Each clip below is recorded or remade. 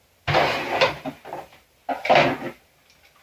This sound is recorded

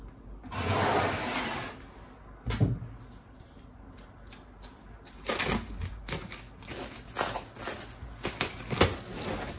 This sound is recorded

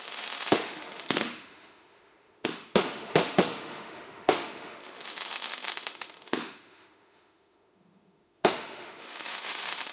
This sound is remade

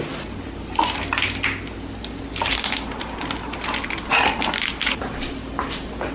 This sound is recorded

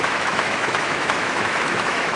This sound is remade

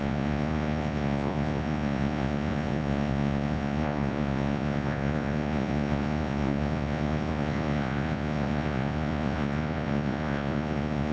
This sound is remade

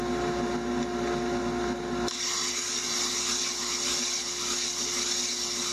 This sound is recorded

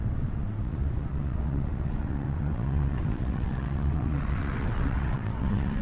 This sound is remade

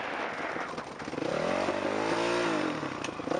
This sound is recorded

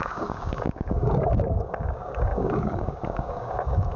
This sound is remade